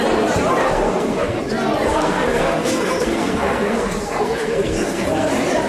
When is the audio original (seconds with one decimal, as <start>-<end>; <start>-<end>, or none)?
0.0-0.6; 1.4-1.9; 5.3-5.7